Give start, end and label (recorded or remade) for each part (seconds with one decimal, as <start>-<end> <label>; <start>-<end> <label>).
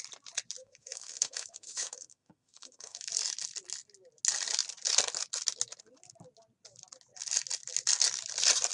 0.0-0.6 recorded; 0.6-3.1 remade; 3.1-8.7 recorded